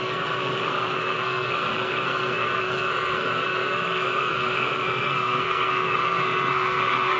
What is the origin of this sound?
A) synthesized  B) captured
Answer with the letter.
A